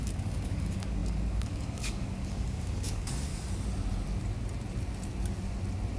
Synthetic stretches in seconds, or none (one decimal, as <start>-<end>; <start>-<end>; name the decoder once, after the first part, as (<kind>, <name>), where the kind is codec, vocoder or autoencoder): 0.0-3.3 (codec, DAC)